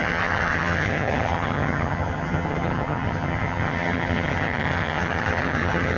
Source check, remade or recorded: remade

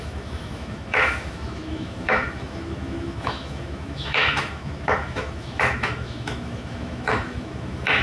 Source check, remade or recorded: remade